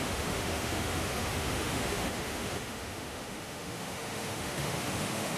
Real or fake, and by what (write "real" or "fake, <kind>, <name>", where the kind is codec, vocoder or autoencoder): fake, autoencoder, DAC-VAE